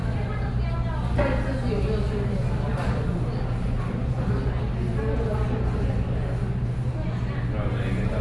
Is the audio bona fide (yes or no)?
yes